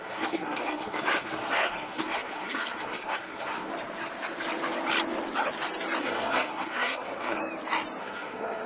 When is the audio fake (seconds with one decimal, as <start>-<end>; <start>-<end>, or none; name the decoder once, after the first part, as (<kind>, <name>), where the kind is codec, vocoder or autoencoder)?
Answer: 0.0-3.7 (codec, SNAC); 6.0-7.4; 8.0-8.7